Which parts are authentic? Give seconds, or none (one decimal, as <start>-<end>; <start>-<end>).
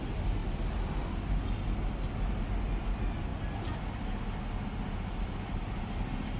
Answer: 0.0-6.4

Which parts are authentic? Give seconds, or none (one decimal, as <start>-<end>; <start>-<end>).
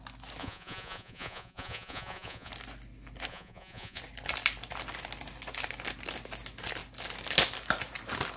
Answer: 0.0-0.4; 2.5-3.3; 4.0-8.4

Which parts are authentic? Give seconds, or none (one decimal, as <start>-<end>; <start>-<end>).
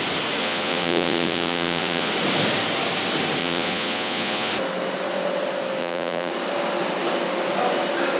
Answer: 0.0-0.4; 2.1-3.4; 4.5-5.8; 6.3-8.2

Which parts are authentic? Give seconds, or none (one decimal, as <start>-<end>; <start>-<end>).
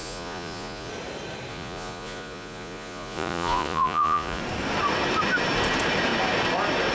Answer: 0.9-1.5; 4.4-6.9